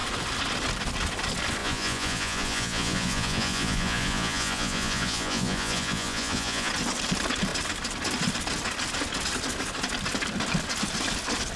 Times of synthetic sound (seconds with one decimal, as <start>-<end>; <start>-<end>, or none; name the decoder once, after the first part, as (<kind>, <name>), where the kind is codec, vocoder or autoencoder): 1.6-6.7 (vocoder, Vocos)